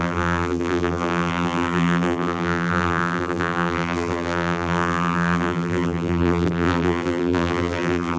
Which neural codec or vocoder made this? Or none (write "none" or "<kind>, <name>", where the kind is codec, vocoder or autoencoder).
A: vocoder, BigVGAN v2